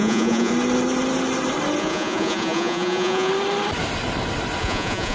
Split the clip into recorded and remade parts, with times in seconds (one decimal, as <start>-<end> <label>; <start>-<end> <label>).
0.0-0.5 remade; 0.5-1.8 recorded; 1.8-3.3 remade; 3.3-4.6 recorded; 4.6-5.1 remade